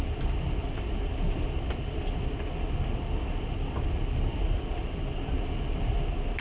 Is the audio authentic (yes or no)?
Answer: yes